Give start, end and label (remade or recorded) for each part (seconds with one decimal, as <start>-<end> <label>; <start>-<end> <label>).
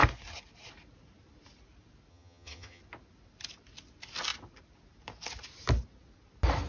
0.0-2.1 recorded; 2.1-2.8 remade; 2.8-6.7 recorded